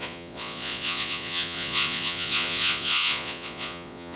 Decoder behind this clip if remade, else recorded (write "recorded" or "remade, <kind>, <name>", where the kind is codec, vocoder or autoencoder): remade, vocoder, Vocos